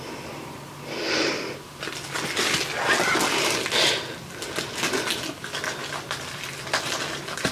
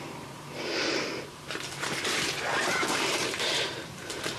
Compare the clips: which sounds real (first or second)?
first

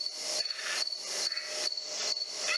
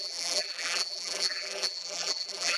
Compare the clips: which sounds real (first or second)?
first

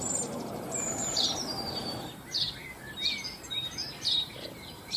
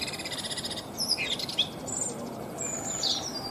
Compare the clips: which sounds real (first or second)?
second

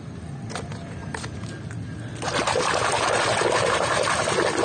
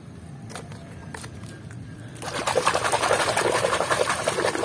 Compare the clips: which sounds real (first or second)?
first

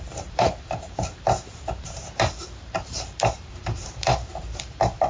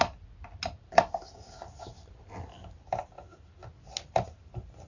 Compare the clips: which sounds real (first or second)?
second